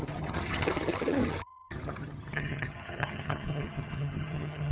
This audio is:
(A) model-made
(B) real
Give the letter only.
A